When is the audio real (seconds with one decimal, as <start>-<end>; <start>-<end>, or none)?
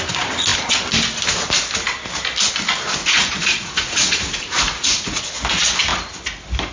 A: 0.0-3.0; 5.2-6.7